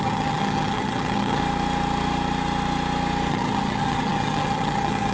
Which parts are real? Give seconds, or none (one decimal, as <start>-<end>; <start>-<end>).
1.4-3.3